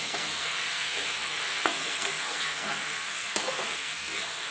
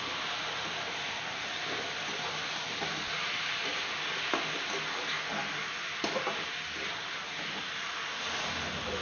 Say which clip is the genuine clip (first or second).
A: second